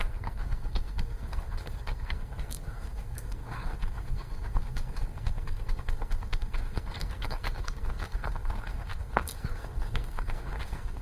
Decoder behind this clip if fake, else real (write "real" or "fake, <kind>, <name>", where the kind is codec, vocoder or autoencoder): fake, codec, SNAC